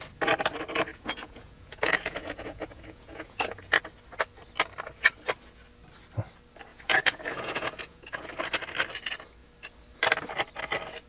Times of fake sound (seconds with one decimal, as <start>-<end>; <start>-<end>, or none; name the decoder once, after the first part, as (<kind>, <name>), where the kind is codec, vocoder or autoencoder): 0.9-3.8 (vocoder, Vocos); 6.7-8.3

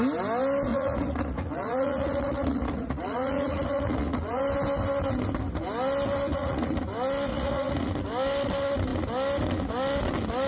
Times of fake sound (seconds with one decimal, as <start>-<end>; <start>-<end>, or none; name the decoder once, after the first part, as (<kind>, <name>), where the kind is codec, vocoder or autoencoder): 0.7-4.4 (vocoder, Vocos); 6.3-6.8; 7.3-7.9

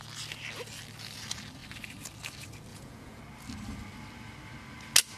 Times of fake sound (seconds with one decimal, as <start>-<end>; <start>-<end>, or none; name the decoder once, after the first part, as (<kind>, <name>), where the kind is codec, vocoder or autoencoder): 2.7-3.2 (vocoder, Vocos)

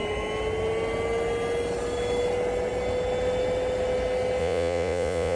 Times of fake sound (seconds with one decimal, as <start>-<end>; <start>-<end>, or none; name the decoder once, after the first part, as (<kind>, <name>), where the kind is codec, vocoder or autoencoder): 4.4-5.4 (vocoder, Vocos)

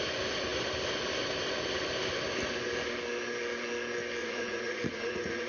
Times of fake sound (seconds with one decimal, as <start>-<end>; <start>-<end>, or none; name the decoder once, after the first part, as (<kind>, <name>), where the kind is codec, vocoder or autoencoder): 4.2-5.5 (vocoder, Vocos)

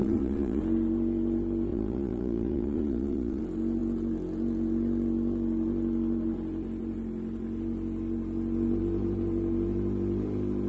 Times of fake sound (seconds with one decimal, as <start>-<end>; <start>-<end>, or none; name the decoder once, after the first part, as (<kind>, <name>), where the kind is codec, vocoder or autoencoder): 0.0-0.6 (vocoder, Vocos); 1.7-3.4

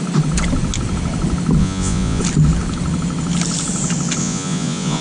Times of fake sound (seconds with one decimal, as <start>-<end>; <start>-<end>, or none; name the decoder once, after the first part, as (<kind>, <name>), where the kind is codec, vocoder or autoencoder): 1.6-2.2 (vocoder, Vocos); 4.2-5.0

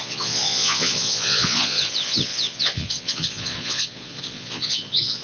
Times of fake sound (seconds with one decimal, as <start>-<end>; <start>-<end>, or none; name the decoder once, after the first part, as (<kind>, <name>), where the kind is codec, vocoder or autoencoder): 0.0-5.2 (vocoder, Vocos)